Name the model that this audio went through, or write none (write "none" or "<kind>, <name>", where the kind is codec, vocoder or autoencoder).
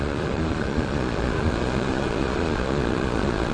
vocoder, Vocos